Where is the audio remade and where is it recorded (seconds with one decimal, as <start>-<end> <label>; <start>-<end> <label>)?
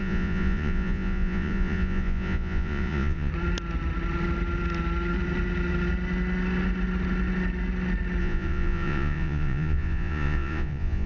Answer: 0.0-3.3 remade; 3.3-8.2 recorded; 8.2-11.1 remade